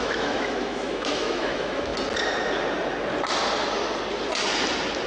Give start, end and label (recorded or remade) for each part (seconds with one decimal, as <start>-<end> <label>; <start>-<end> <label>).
0.0-1.9 remade; 1.9-5.1 recorded